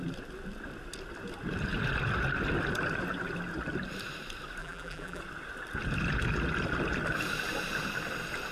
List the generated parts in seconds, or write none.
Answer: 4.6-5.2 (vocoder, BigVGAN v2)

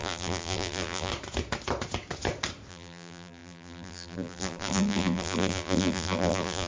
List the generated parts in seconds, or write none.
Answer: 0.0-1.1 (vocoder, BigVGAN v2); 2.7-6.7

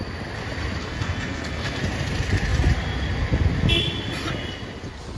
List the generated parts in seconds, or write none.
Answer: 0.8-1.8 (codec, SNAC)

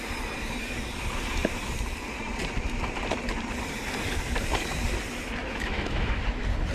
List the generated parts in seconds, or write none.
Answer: 5.4-6.2 (autoencoder, DAC-VAE)

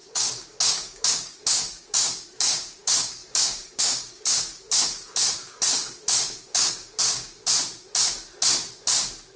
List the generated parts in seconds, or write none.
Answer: 0.0-7.4 (codec, DAC)

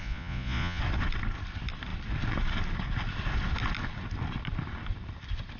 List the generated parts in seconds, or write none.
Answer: 0.0-0.8 (vocoder, Vocos)

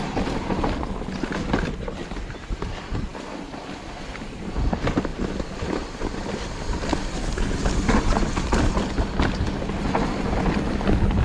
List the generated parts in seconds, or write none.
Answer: 3.1-4.4 (vocoder, BigVGAN v2); 5.1-8.7

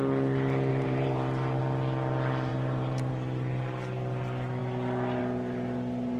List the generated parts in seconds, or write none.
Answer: 0.7-1.6 (vocoder, BigVGAN v2); 2.5-3.1